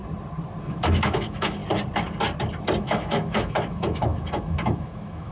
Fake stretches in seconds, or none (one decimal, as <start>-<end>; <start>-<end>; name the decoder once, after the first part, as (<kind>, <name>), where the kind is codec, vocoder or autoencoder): 0.6-1.6 (autoencoder, DAC-VAE); 2.8-5.3